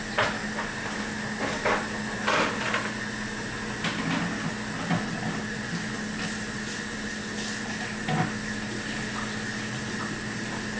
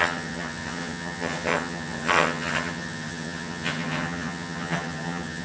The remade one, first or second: second